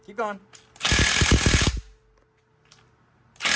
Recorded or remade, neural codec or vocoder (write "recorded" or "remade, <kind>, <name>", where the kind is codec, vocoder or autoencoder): recorded